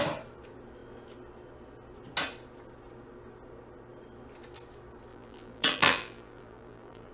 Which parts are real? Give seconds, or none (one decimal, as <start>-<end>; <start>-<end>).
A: 0.0-5.1